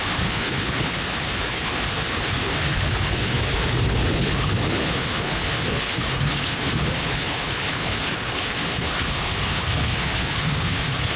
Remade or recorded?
remade